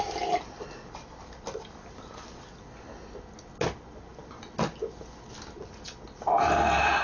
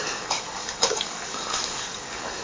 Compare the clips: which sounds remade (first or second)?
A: second